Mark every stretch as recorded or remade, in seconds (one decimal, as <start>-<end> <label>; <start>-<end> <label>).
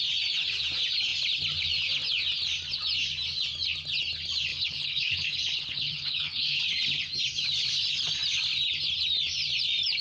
0.0-4.5 recorded; 4.5-6.6 remade; 6.6-10.0 recorded